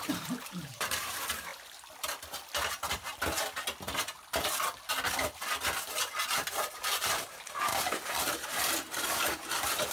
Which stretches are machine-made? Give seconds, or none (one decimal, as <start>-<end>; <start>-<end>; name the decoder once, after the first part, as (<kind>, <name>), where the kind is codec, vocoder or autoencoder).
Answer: 0.0-1.5 (vocoder, BigVGAN v2); 6.7-9.9